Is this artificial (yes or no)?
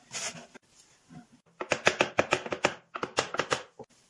no